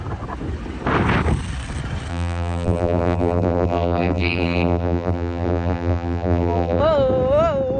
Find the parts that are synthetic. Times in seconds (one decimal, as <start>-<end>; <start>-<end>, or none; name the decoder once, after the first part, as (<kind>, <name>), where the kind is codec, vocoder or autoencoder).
2.1-6.8 (vocoder, BigVGAN v2)